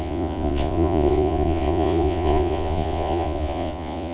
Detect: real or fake fake